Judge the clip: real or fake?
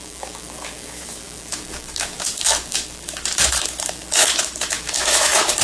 fake